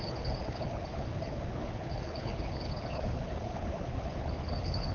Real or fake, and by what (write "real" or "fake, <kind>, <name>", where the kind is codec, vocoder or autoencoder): fake, codec, HILCodec